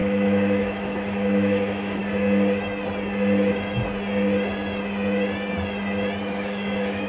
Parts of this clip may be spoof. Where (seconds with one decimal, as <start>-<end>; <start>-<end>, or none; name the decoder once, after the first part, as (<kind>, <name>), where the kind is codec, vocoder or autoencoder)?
0.0-2.0 (autoencoder, DAC-VAE); 6.2-7.1